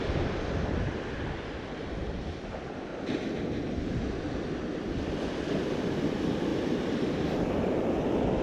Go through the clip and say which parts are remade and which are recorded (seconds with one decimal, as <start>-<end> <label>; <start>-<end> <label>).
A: 0.0-2.9 remade; 2.9-3.7 recorded; 3.7-8.4 remade